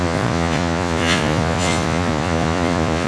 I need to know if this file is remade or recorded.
remade